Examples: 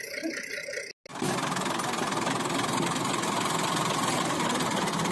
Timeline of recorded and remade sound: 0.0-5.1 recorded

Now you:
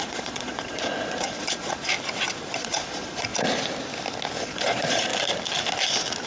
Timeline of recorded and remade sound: 0.0-1.9 remade; 1.9-2.5 recorded; 2.5-3.3 remade; 3.3-4.4 recorded; 4.4-5.1 remade; 5.1-6.3 recorded

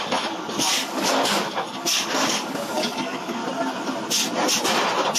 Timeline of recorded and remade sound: 0.0-3.4 remade; 3.4-5.2 recorded

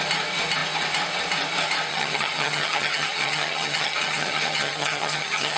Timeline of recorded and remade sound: 0.0-1.9 recorded; 1.9-5.6 remade

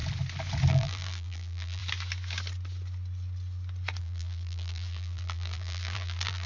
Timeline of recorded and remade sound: 0.0-0.7 recorded; 0.7-1.8 remade; 1.8-4.0 recorded; 4.0-6.5 remade

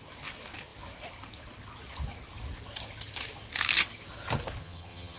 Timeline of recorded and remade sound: 0.0-4.6 recorded; 4.6-5.2 remade